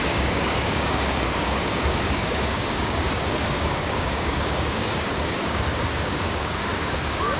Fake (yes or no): yes